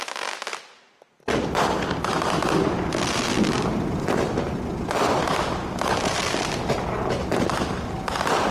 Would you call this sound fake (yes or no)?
no